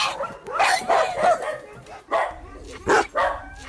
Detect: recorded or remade recorded